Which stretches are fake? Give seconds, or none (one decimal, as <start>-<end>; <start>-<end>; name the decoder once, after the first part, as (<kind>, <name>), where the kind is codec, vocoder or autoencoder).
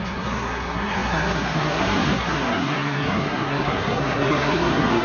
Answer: 0.0-5.0 (codec, SNAC)